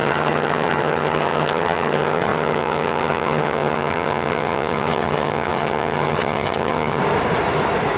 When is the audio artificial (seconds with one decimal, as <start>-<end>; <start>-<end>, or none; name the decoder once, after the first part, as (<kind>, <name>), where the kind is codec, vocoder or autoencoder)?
0.0-7.0 (vocoder, HiFi-GAN)